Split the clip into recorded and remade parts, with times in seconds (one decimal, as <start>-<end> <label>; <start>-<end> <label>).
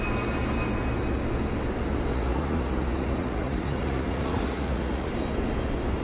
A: 0.0-2.1 recorded; 2.1-5.1 remade; 5.1-6.0 recorded